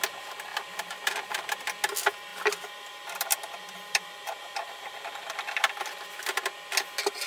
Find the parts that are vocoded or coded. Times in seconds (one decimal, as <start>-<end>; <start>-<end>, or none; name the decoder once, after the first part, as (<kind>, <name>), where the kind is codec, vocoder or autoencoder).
0.5-1.4 (vocoder, BigVGAN v2); 2.3-6.4